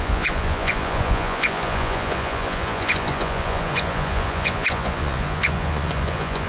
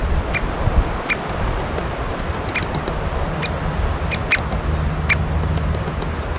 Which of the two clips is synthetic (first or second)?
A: first